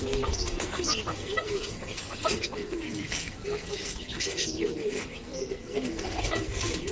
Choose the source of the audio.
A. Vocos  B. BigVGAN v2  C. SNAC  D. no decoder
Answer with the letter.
C